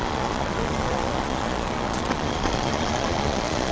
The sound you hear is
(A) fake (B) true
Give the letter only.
A